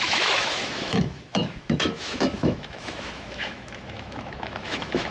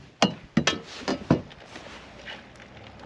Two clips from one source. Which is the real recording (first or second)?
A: second